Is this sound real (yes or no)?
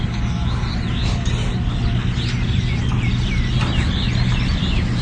yes